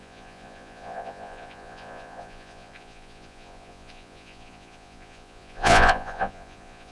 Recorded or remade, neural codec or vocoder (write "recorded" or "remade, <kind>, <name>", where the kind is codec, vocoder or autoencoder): remade, vocoder, Vocos